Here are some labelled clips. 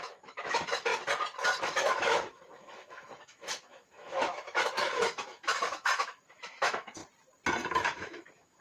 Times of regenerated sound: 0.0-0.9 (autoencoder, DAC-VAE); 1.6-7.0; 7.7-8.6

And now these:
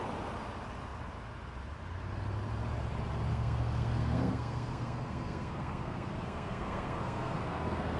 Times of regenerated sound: 3.3-8.0 (codec, SNAC)

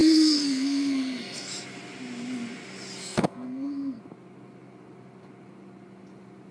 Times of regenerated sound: 0.0-1.5 (codec, SNAC); 3.0-4.0

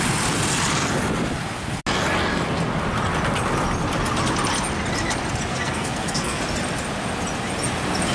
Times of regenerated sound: 5.5-6.4 (codec, SNAC)